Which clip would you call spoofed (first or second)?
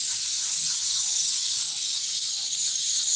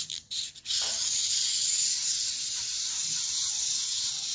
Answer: first